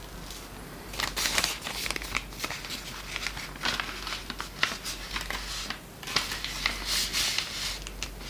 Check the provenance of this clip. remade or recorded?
recorded